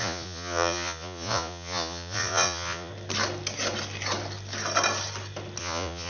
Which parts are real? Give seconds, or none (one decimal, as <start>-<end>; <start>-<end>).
2.9-5.6